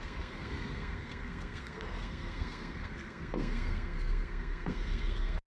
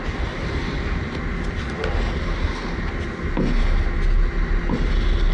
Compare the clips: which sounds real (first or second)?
second